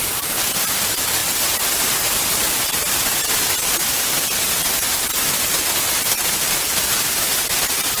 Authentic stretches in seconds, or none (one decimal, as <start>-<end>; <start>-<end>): 0.0-8.0